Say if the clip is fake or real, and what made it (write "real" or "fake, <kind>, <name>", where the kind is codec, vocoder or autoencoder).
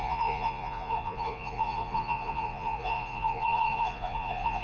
fake, vocoder, Vocos